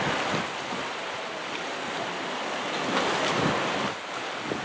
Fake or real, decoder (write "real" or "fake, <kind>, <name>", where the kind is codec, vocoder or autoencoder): real